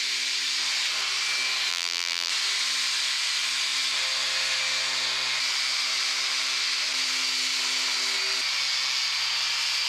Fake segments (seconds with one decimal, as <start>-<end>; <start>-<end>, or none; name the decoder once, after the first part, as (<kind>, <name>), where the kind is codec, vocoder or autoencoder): 1.7-2.3 (vocoder, BigVGAN v2)